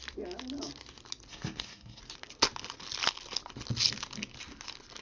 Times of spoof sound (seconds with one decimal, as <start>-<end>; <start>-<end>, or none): 1.3-2.0